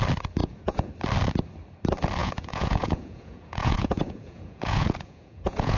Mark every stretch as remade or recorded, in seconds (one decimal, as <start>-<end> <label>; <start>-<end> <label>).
0.0-0.4 recorded; 0.4-0.9 remade; 0.9-2.2 recorded; 2.2-5.8 remade